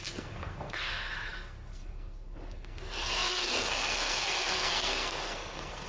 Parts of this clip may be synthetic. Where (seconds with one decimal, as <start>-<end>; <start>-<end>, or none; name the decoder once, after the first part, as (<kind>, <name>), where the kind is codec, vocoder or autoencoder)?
0.0-5.9 (codec, SNAC)